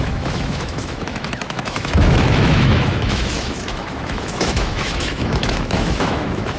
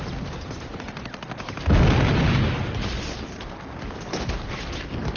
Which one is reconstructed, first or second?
first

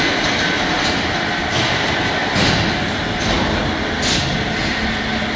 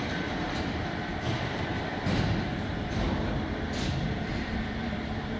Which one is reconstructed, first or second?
second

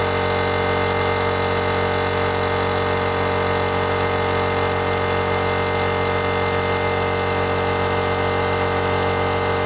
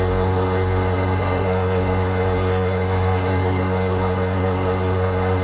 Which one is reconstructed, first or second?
second